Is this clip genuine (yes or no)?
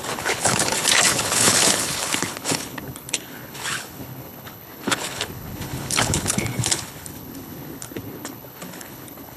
no